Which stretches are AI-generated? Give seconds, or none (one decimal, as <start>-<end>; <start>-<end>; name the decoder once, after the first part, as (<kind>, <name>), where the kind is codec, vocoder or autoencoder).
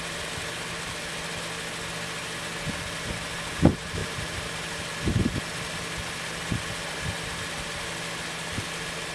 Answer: none